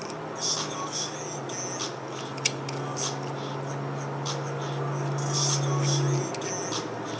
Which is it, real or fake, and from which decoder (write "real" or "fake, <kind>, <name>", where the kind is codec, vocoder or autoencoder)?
real